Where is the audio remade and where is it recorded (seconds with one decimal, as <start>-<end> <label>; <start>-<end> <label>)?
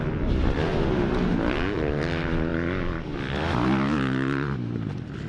0.0-5.3 recorded